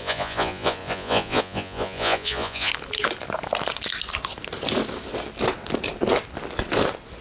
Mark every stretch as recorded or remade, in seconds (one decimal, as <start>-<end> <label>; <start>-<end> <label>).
0.0-2.7 remade; 2.7-7.2 recorded